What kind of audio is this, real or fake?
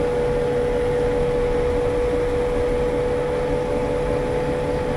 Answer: real